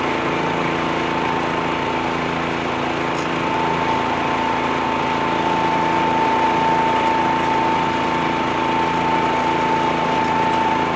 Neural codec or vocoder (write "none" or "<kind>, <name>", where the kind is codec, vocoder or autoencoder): none